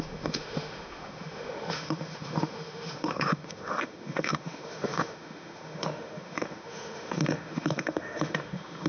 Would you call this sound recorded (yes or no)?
no